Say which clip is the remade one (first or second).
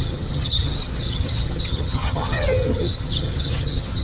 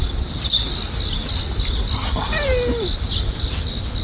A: first